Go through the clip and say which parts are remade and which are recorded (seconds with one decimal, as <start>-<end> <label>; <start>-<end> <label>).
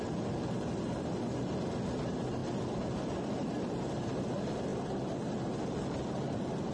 0.0-6.7 recorded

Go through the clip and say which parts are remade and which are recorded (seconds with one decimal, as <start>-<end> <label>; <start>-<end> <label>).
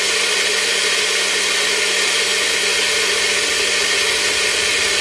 0.0-5.0 recorded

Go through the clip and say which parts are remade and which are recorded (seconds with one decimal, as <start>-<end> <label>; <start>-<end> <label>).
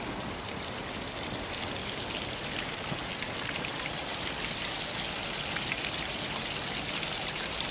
0.0-7.7 recorded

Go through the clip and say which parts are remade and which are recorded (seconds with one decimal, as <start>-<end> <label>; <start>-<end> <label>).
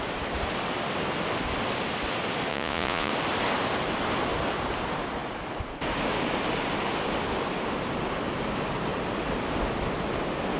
0.0-2.5 recorded; 2.5-3.1 remade; 3.1-10.6 recorded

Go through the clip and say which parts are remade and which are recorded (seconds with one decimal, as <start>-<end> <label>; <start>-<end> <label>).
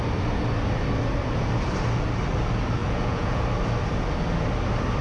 0.0-2.8 recorded; 2.8-3.4 remade; 3.4-5.0 recorded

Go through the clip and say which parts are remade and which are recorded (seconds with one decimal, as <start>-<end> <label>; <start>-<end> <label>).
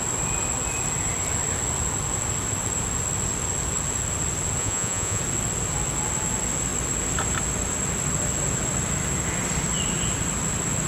0.0-4.6 recorded; 4.6-5.2 remade; 5.2-10.9 recorded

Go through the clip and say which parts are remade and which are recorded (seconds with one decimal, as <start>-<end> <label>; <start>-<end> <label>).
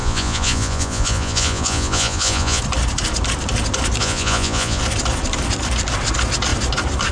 0.0-2.6 remade; 2.6-4.0 recorded; 4.0-4.8 remade; 4.8-7.1 recorded